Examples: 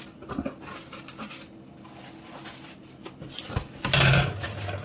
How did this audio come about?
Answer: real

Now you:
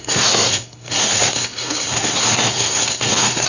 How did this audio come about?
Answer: fake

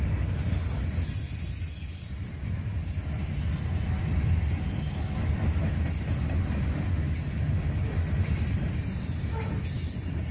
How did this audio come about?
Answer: real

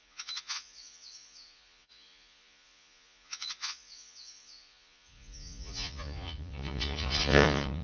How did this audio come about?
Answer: fake